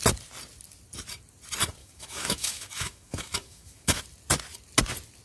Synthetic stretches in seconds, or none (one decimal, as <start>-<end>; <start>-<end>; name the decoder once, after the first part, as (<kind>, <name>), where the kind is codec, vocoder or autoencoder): 1.8-4.0 (autoencoder, DAC-VAE)